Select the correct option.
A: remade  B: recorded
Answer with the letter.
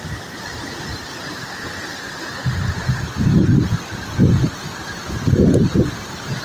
B